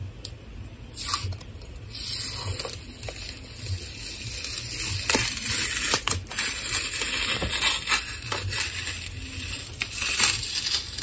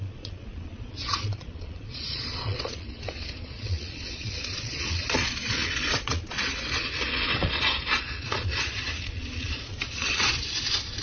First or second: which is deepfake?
second